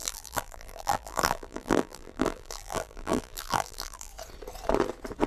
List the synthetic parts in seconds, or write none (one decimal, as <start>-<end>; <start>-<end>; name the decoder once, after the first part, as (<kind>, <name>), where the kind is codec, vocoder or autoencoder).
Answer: 0.0-4.1 (vocoder, BigVGAN v2)